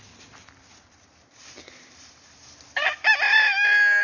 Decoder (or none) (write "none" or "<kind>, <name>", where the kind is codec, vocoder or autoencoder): none